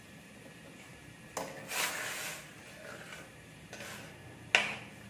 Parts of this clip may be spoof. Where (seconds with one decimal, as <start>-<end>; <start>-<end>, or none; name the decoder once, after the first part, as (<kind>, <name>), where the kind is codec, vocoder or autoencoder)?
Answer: none

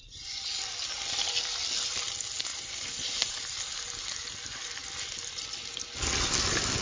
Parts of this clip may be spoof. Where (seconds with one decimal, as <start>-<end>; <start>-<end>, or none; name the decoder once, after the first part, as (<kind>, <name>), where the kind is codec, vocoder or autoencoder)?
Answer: 2.5-3.6 (vocoder, BigVGAN v2)

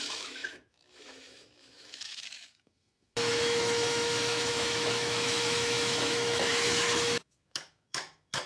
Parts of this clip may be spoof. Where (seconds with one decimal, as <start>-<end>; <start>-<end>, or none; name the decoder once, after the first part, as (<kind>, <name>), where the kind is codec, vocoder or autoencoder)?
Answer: 0.0-8.5 (autoencoder, DAC-VAE)